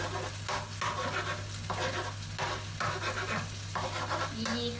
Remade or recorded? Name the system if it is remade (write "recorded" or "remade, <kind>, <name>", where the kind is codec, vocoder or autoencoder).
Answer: recorded